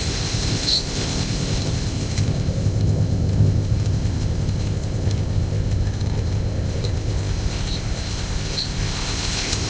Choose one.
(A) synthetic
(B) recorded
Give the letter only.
A